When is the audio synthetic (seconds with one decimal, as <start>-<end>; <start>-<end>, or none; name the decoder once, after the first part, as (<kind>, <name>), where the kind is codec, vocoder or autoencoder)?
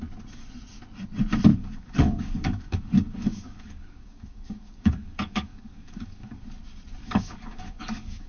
1.5-6.4 (codec, DAC); 7.0-8.3